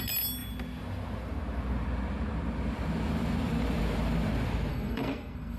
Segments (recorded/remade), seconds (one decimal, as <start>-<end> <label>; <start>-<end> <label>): 0.0-4.7 recorded; 4.7-5.6 remade